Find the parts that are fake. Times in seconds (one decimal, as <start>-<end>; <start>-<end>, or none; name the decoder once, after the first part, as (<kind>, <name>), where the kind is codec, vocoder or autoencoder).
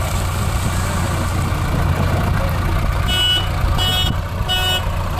none